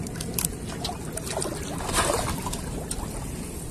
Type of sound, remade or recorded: recorded